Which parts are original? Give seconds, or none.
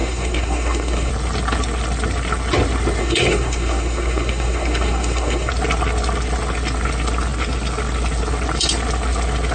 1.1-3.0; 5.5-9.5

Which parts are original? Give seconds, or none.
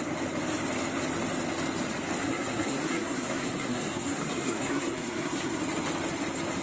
0.0-2.2; 5.6-6.6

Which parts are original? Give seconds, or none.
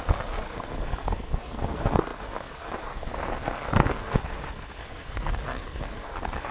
none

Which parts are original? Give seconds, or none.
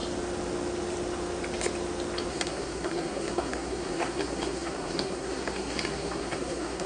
0.0-2.3